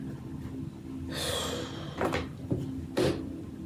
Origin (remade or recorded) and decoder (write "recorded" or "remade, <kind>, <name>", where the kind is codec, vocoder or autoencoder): recorded